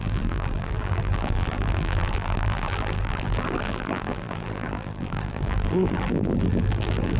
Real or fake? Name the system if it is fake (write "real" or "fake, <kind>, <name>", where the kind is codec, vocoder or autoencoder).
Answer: fake, vocoder, BigVGAN v2